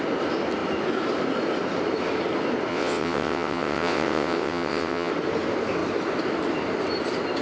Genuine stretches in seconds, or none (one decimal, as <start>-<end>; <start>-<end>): 0.0-2.7; 5.1-7.4